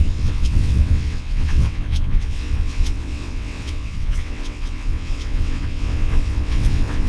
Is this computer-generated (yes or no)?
yes